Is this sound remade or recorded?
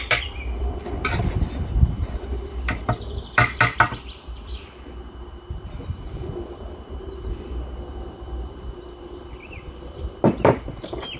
remade